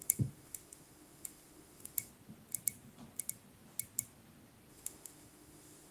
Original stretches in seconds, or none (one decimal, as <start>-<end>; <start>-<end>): 2.1-4.7